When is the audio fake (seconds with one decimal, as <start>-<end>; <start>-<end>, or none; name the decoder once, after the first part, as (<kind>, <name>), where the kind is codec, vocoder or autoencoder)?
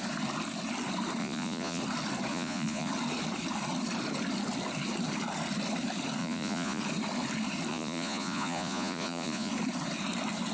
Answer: 1.2-1.8 (vocoder, Vocos); 2.3-2.9; 6.2-6.8; 7.7-9.5